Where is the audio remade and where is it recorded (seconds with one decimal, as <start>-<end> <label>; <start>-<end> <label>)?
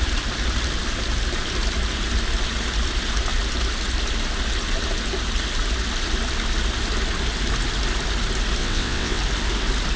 0.0-8.6 recorded; 8.6-9.2 remade; 9.2-10.0 recorded